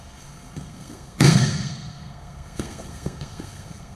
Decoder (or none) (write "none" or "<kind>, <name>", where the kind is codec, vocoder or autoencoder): codec, SNAC